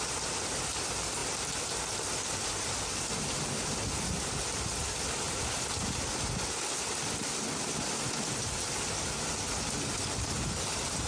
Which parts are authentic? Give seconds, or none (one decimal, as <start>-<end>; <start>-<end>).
0.0-11.1